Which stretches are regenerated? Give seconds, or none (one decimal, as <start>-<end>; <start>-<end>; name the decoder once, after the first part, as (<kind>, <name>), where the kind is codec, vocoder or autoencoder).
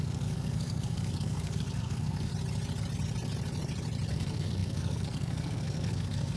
0.0-2.3 (codec, SNAC); 4.1-6.4